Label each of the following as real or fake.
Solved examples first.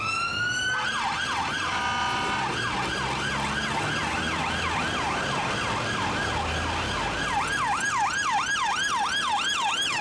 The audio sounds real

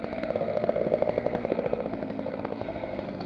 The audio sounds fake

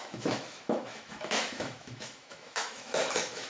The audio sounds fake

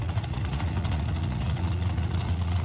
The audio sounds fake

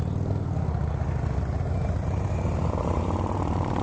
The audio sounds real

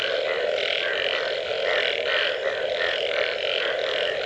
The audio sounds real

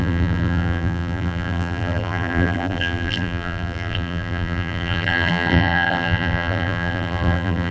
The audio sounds fake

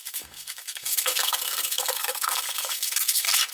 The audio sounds fake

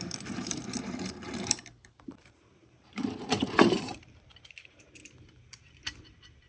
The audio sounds fake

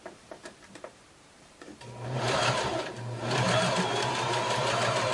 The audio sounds fake